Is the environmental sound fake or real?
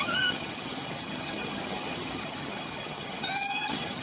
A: fake